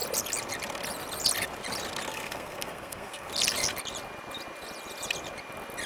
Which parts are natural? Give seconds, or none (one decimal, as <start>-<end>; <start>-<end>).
0.0-2.1; 3.3-5.9